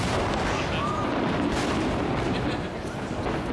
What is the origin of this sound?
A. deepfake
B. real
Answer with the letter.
B